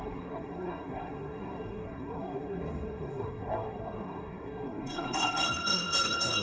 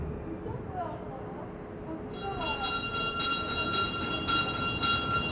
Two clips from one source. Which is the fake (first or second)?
first